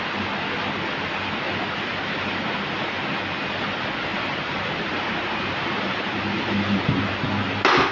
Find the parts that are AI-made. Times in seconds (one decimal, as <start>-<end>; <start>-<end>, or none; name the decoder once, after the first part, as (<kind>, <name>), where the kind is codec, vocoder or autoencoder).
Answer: 4.1-6.9 (vocoder, BigVGAN v2)